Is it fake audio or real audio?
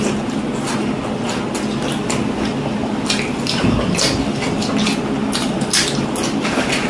real